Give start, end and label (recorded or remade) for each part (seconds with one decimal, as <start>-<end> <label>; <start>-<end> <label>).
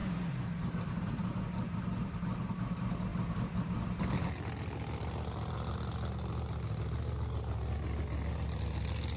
0.0-1.4 remade; 1.4-9.2 recorded